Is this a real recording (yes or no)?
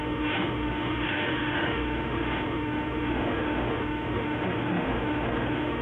no